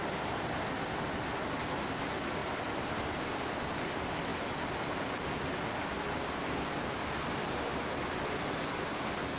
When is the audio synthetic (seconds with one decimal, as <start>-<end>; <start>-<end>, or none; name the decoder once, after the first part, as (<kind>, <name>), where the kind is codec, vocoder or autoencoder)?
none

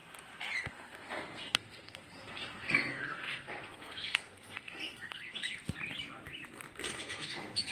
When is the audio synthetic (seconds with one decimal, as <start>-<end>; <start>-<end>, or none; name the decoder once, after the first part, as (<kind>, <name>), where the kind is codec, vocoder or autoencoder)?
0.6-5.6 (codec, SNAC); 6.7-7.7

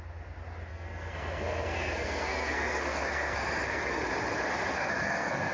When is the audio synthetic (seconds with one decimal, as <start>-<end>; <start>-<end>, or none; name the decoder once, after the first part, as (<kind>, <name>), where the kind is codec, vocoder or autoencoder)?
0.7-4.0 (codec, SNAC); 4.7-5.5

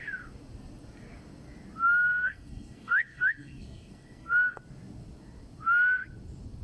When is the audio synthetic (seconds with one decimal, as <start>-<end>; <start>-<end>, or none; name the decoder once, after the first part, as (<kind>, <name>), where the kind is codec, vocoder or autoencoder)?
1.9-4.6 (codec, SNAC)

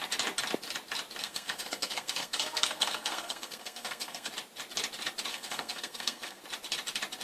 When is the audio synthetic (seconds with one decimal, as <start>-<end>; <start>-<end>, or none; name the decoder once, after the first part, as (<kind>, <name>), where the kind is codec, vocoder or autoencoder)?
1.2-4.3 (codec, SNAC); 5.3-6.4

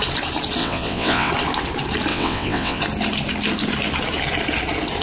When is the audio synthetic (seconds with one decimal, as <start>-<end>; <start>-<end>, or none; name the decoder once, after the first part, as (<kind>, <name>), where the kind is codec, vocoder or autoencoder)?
0.6-1.3 (vocoder, WaveNeXt); 2.1-2.8

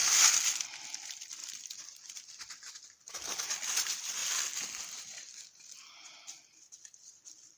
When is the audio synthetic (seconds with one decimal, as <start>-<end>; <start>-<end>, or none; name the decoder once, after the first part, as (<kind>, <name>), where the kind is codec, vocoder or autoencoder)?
none

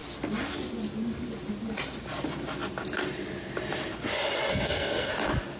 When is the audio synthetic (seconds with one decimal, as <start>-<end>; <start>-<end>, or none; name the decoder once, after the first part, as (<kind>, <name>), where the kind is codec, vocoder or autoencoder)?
4.5-5.1 (codec, SNAC)